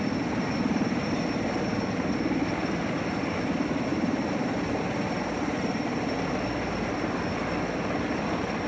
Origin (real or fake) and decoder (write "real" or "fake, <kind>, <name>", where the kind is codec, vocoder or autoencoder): real